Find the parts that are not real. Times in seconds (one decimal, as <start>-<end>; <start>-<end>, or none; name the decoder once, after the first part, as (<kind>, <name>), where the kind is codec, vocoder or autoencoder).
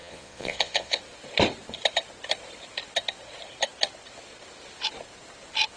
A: 0.0-1.0 (vocoder, Vocos)